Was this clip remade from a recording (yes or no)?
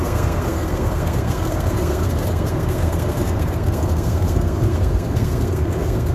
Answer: yes